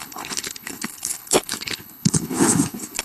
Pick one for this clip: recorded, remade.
remade